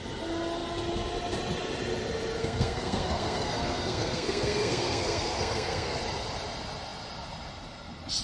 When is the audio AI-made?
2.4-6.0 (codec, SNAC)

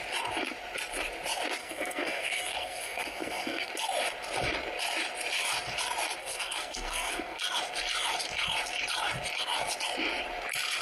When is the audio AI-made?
1.6-3.7 (codec, SNAC); 6.2-7.4

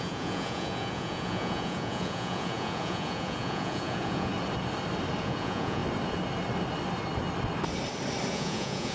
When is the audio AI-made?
0.0-4.3 (vocoder, Vocos); 5.2-5.8; 8.3-8.9

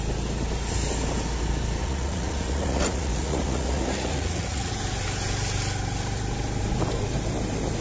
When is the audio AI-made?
1.8-4.7 (vocoder, Vocos)